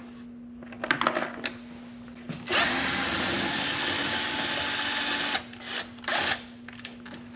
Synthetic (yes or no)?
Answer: no